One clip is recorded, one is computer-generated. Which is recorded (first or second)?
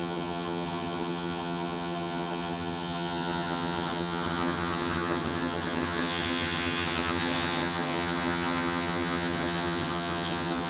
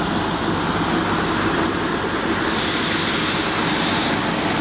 second